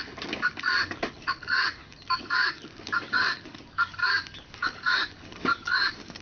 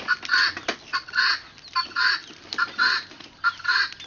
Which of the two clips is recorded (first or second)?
second